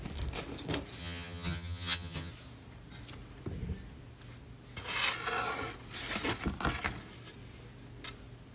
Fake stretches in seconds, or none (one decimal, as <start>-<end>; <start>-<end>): 1.0-2.3